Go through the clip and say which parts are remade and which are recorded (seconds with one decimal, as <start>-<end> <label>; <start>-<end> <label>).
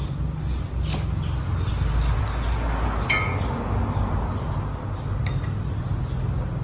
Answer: 0.0-6.6 recorded